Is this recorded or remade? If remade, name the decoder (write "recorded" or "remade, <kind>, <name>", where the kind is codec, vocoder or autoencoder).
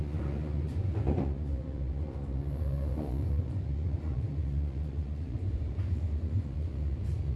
remade, vocoder, Vocos